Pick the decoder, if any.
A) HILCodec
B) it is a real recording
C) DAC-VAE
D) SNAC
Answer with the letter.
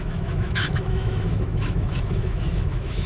C